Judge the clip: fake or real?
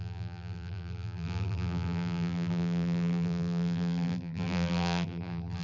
fake